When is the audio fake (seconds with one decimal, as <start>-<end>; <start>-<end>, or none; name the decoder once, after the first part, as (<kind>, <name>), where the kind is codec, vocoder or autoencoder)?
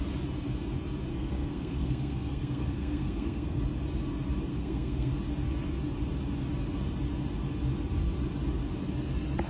1.1-3.6 (codec, SNAC); 4.5-5.1